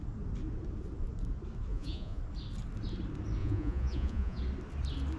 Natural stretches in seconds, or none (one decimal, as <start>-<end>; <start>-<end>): 0.0-1.7; 2.2-3.4; 4.4-5.2